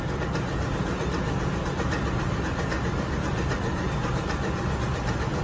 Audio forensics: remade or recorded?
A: recorded